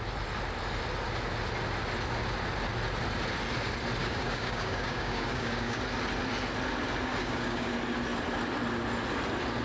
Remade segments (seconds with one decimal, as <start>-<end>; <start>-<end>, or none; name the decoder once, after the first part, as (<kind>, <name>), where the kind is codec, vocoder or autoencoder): 4.0-5.8 (codec, DAC); 7.2-7.7